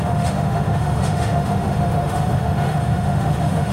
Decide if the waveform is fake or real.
fake